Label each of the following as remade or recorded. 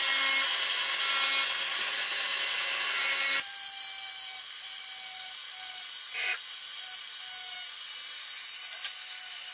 recorded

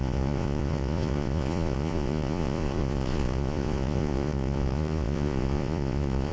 remade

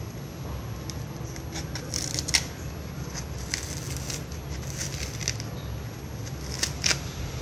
recorded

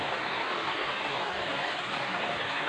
remade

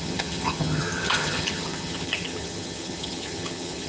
remade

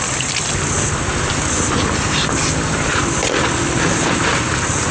recorded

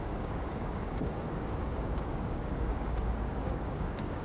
remade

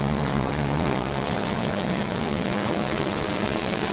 remade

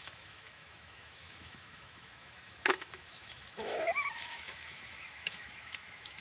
remade